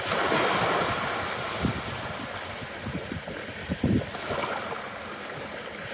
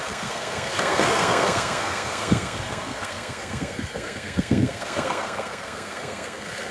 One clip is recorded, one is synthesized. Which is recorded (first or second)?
first